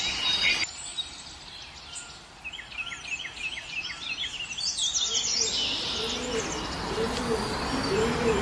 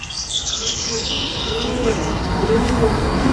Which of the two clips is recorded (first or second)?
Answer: first